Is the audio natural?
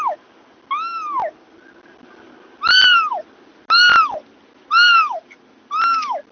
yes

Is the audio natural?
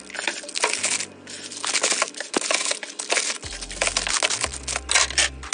yes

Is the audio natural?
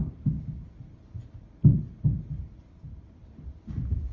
yes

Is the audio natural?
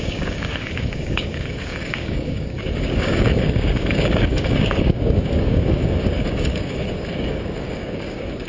no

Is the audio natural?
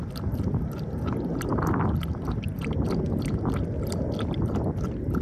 yes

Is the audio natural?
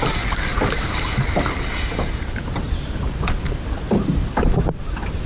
yes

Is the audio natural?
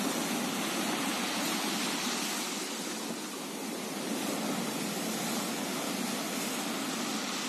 yes